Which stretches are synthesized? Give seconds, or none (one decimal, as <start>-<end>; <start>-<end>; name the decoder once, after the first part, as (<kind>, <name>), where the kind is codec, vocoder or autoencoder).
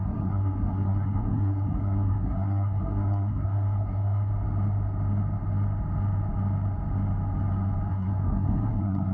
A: 0.0-4.3 (codec, SNAC); 7.9-9.1